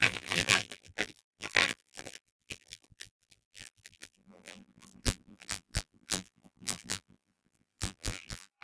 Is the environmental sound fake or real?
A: fake